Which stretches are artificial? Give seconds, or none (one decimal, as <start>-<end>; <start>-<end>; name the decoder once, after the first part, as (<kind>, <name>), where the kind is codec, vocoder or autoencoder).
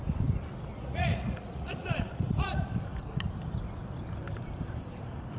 0.7-2.6 (vocoder, Vocos)